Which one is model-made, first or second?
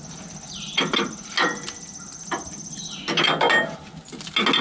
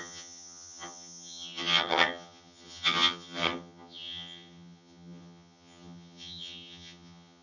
second